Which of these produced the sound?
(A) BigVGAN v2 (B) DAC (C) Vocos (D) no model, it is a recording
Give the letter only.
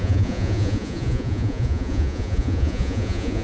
C